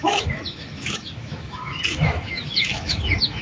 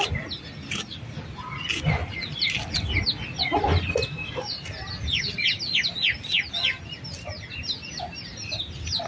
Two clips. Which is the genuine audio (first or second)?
second